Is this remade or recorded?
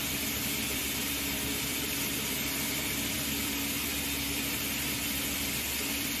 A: remade